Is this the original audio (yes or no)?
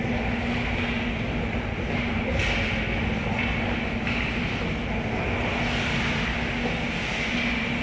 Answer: yes